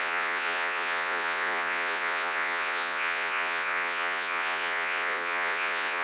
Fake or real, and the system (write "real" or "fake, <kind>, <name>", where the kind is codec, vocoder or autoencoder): fake, vocoder, Vocos